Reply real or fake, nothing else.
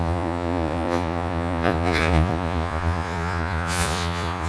fake